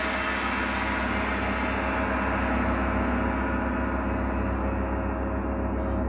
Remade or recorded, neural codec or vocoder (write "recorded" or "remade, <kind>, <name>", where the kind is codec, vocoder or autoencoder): recorded